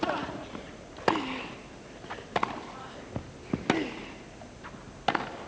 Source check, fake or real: real